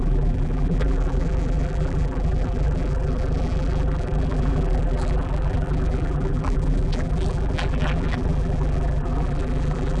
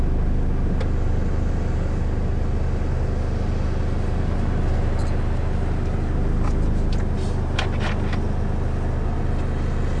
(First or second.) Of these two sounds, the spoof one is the first